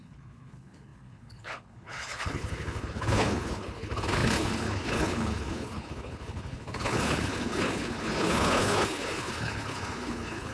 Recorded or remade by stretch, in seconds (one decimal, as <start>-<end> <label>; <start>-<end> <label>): 0.0-10.5 remade